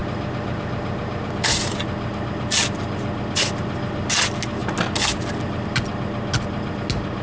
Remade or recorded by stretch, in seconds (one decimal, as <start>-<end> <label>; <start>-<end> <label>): 0.0-7.2 recorded